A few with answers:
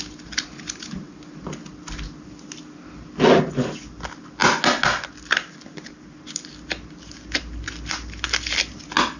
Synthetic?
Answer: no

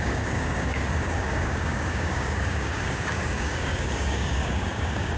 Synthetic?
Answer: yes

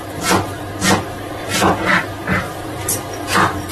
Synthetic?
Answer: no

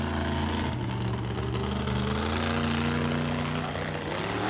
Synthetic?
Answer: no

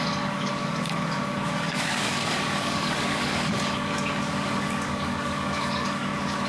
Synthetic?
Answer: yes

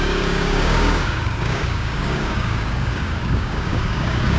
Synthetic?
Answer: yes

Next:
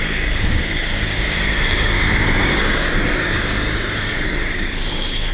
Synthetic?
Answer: yes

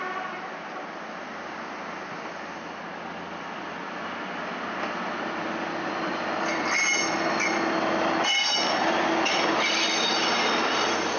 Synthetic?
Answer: no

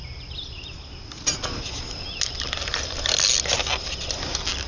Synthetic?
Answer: no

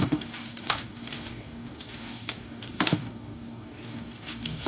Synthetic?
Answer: yes